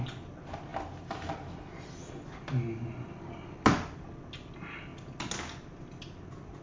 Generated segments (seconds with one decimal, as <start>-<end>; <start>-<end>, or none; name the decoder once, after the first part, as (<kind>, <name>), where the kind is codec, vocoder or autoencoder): none